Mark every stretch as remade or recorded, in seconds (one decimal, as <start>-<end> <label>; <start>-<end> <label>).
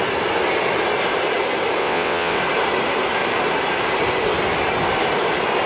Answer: 0.0-1.8 recorded; 1.8-2.4 remade; 2.4-5.7 recorded